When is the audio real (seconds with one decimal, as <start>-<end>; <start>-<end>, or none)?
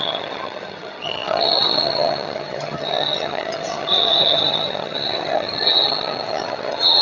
none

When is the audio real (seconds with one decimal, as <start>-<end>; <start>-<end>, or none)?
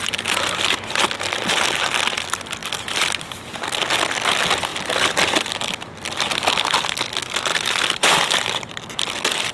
0.0-2.6; 3.3-7.5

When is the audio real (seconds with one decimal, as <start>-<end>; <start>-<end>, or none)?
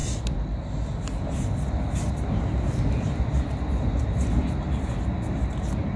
0.0-6.0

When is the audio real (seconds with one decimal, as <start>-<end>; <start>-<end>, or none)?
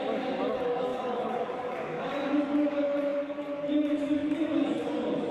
none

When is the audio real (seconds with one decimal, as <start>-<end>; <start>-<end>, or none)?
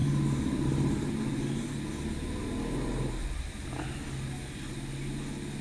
0.0-5.6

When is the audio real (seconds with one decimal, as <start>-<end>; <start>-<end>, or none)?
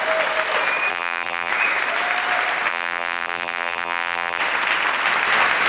0.0-0.9; 1.5-2.7; 4.4-5.7